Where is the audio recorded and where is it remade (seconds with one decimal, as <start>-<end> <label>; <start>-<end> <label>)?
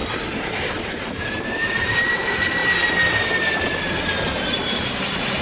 0.0-2.6 remade; 2.6-4.3 recorded; 4.3-5.4 remade